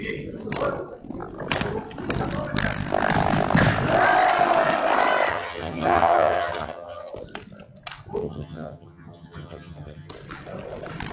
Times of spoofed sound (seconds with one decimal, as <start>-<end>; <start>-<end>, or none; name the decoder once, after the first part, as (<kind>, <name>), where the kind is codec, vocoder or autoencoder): 5.3-7.1 (vocoder, HiFi-GAN); 8.2-10.1